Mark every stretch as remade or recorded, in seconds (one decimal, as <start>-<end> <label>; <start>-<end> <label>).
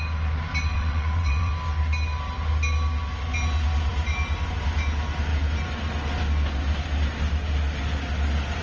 0.0-0.7 recorded; 0.7-1.5 remade; 1.5-8.6 recorded